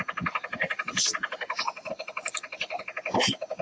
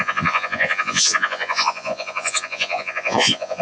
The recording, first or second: first